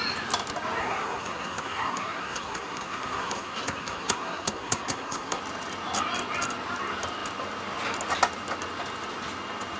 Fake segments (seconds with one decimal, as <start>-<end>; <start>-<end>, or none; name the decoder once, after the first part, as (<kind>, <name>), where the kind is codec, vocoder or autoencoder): 0.8-5.4 (codec, SNAC)